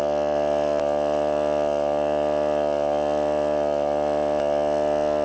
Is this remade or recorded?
recorded